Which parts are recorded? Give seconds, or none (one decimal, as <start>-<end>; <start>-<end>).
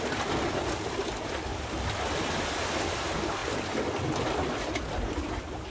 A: 0.0-5.7